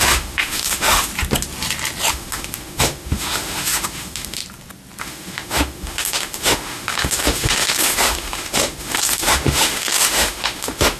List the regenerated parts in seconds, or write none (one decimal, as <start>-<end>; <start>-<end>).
0.0-1.1; 2.1-4.4; 5.0-11.0